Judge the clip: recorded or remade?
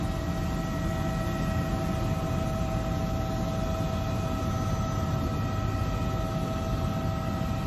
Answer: recorded